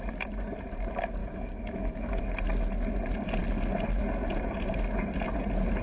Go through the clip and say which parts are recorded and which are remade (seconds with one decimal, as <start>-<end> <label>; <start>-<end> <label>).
0.0-1.2 recorded; 1.2-2.2 remade; 2.2-5.8 recorded